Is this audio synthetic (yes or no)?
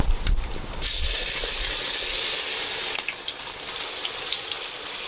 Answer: no